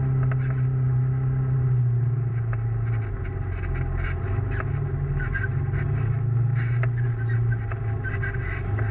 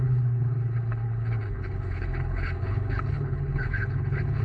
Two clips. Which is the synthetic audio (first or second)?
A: second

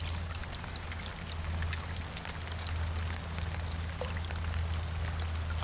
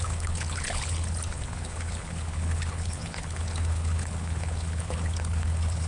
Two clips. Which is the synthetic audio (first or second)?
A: second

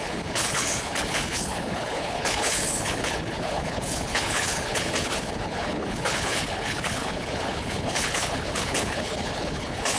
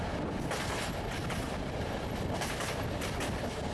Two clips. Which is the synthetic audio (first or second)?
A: first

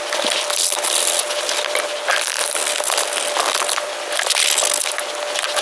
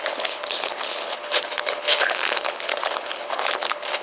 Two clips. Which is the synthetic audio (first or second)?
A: second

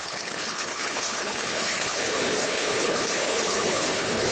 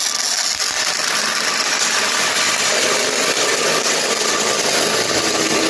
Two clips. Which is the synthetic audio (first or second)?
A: first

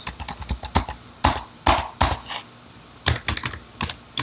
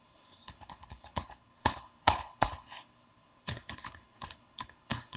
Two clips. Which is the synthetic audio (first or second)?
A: second